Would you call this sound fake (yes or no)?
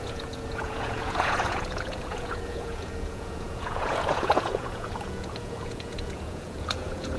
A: yes